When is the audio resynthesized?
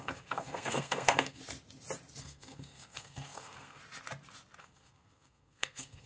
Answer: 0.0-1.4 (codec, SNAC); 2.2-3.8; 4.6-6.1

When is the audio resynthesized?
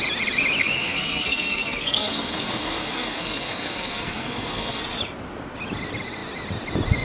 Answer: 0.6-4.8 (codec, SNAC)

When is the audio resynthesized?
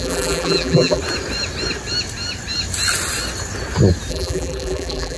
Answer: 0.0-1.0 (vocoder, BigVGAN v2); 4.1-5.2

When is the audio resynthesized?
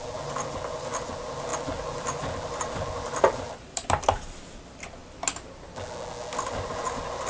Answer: 0.0-5.0 (vocoder, BigVGAN v2); 6.3-7.3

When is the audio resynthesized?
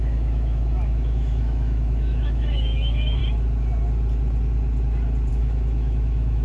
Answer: 0.0-3.2 (autoencoder, DAC-VAE); 5.3-6.4